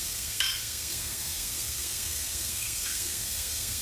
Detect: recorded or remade remade